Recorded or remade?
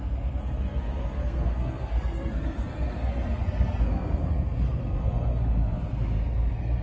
remade